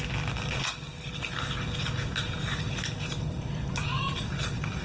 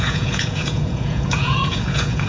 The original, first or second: first